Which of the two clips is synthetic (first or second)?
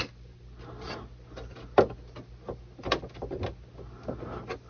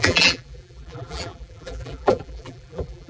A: second